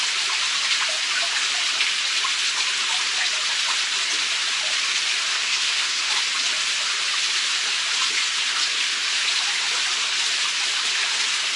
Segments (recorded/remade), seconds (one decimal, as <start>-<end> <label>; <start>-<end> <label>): 0.0-5.3 recorded; 5.3-6.1 remade; 6.1-11.6 recorded